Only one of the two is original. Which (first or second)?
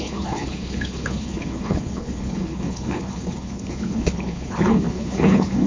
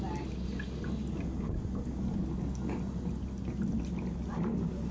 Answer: second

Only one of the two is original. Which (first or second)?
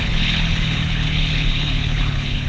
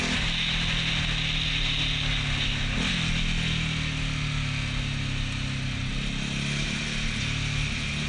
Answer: second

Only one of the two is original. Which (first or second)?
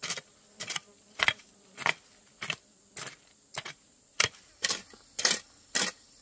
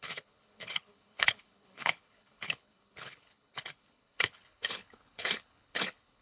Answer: first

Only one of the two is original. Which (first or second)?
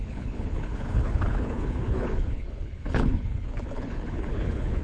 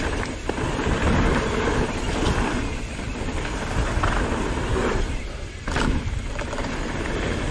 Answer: second